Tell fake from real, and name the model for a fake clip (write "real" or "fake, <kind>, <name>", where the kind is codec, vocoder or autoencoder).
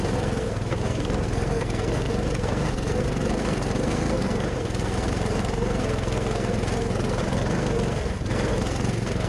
fake, codec, SNAC